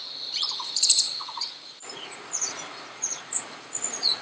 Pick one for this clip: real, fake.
fake